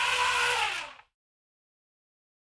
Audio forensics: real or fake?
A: real